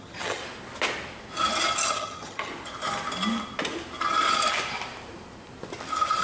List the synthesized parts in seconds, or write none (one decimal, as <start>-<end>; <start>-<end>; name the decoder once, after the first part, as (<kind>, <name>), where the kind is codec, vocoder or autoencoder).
0.0-0.4 (vocoder, HiFi-GAN); 1.9-2.5